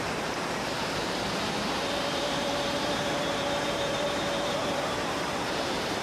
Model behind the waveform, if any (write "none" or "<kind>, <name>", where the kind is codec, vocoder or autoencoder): vocoder, BigVGAN v2